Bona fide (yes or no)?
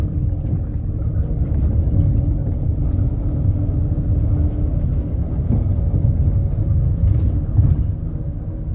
yes